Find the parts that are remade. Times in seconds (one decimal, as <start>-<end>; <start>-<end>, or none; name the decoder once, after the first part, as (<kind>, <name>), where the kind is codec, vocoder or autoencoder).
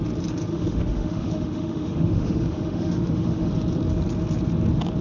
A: 0.5-3.5 (autoencoder, DAC-VAE)